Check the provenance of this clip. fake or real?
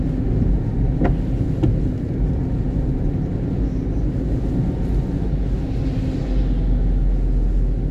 real